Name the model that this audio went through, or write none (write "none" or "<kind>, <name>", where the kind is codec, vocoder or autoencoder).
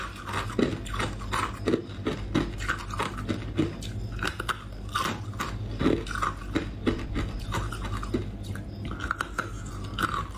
none